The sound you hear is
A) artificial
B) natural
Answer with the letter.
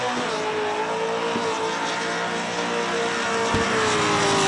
B